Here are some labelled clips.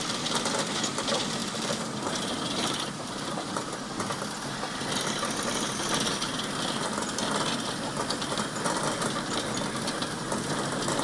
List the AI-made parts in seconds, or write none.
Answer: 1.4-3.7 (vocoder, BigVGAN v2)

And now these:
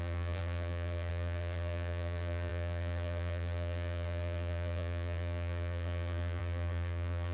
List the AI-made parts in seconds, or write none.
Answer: 0.0-7.3 (vocoder, BigVGAN v2)

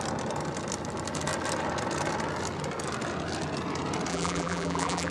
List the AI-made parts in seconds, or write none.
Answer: 4.1-5.1 (vocoder, BigVGAN v2)

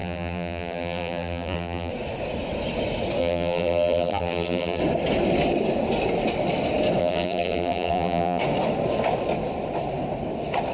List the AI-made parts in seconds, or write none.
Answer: 0.0-1.9 (vocoder, BigVGAN v2); 3.2-4.8; 7.0-8.4